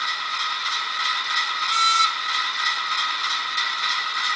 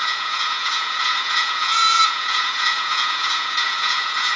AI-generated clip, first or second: second